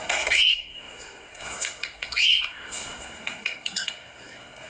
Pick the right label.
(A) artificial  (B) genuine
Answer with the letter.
A